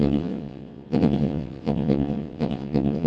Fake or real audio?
fake